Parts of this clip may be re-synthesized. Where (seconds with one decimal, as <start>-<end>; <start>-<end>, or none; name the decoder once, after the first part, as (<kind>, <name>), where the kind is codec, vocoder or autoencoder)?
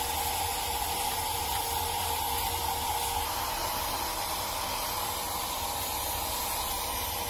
0.5-2.2 (vocoder, BigVGAN v2); 3.6-5.2